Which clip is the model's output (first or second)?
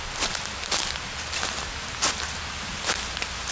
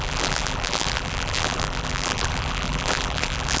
second